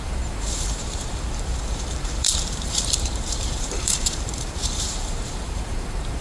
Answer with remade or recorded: remade